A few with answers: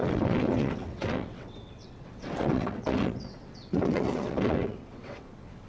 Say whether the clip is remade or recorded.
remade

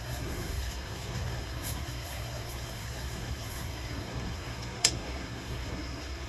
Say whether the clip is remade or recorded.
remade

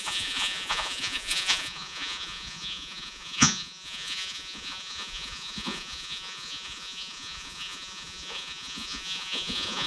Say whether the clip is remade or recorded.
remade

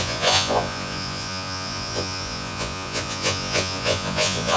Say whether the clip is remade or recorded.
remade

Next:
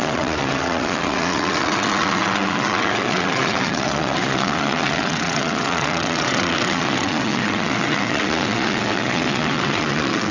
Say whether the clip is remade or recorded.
remade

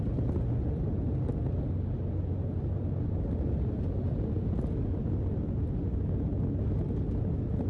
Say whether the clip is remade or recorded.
recorded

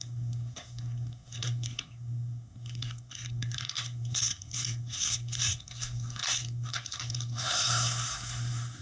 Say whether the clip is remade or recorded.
remade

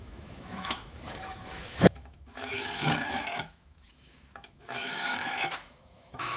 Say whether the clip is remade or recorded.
remade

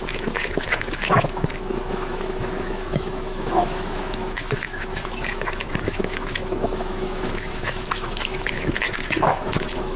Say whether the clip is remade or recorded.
remade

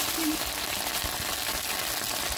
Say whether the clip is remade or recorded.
recorded